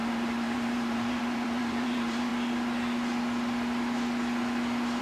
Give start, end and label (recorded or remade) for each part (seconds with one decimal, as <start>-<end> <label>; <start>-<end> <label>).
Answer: 0.0-2.3 remade; 2.3-5.0 recorded